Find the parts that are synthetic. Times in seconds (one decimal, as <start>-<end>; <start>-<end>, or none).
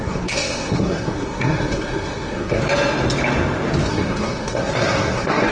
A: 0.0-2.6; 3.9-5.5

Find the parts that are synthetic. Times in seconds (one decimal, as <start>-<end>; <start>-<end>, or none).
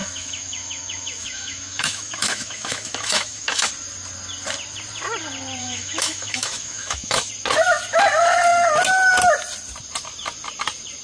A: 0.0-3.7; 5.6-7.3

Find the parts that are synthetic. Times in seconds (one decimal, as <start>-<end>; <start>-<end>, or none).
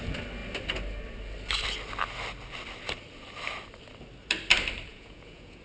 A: 4.9-5.6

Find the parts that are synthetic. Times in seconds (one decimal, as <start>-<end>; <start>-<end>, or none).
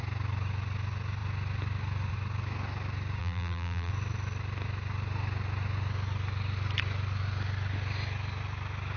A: 3.2-3.9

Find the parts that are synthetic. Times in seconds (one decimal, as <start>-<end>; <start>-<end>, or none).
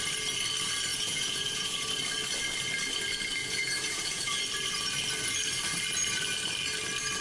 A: 0.9-1.9; 3.4-4.4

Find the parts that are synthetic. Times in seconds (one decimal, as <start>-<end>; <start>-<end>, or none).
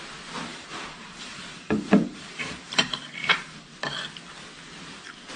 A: 0.5-3.7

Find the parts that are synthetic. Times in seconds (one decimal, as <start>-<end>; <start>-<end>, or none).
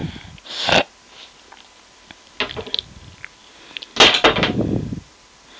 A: none